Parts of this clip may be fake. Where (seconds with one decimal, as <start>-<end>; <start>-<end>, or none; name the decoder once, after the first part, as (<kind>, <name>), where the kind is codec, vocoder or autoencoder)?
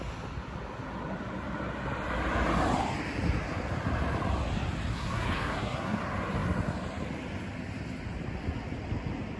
4.9-6.0 (codec, SNAC)